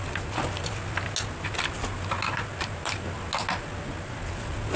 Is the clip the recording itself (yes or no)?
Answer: yes